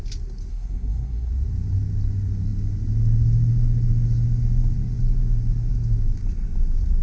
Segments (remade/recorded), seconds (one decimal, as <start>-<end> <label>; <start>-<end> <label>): 0.0-0.5 recorded; 0.5-1.3 remade; 1.3-7.0 recorded